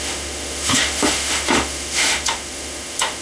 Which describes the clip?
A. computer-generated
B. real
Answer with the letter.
A